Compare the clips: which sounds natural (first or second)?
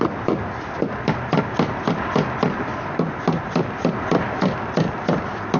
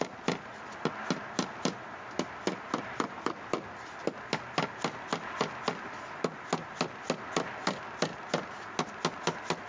second